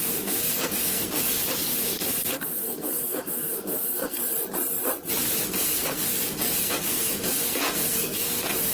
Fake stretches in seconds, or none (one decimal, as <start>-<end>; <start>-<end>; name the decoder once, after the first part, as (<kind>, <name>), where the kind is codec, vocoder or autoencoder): 0.0-1.4 (codec, SNAC); 2.3-4.2; 5.4-8.7